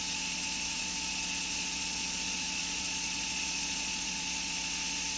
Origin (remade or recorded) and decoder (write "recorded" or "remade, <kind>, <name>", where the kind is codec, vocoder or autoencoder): remade, vocoder, Vocos